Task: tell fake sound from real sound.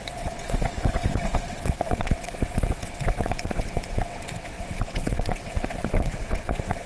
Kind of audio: fake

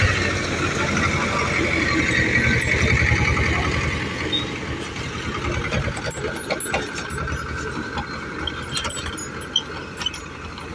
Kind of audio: real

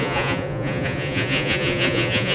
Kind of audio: fake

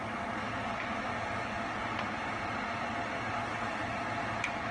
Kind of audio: real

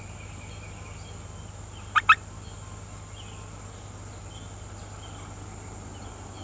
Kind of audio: real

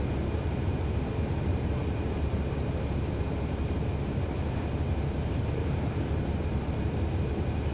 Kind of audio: fake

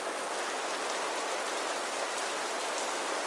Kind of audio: real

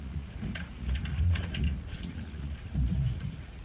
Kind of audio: fake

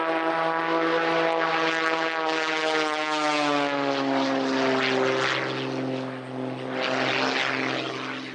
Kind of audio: real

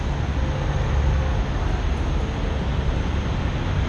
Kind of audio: real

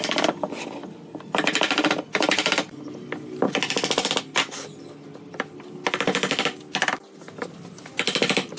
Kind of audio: real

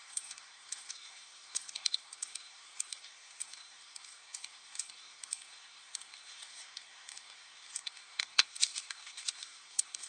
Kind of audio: fake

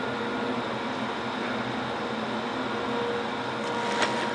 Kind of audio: real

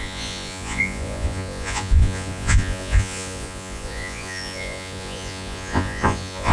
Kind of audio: fake